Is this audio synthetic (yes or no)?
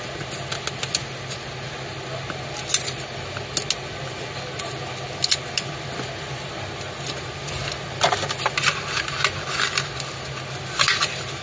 no